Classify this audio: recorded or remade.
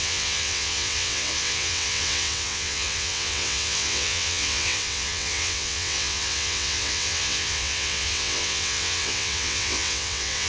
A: remade